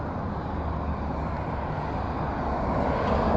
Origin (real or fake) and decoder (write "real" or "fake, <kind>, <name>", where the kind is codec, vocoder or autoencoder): real